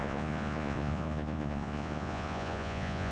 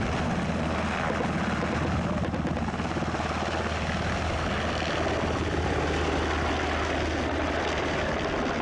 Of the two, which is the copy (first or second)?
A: first